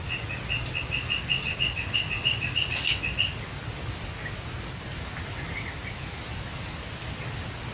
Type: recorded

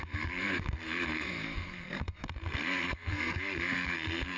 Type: remade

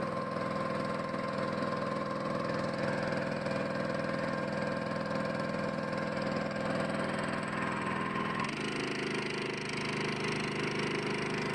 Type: recorded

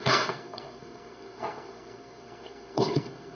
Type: remade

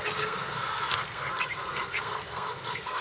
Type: remade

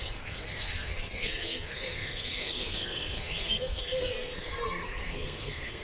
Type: remade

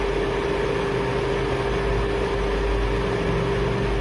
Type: recorded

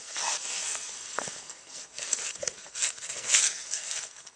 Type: remade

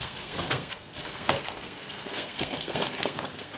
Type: remade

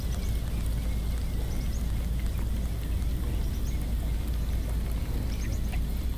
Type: recorded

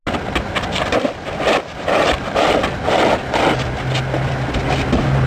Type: recorded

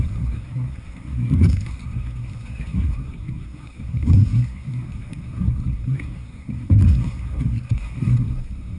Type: remade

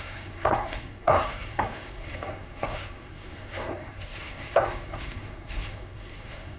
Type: remade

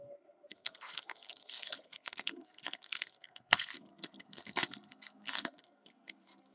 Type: remade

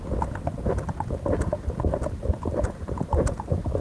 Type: recorded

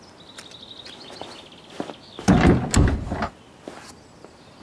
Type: recorded